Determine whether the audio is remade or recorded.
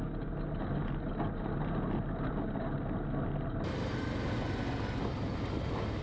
recorded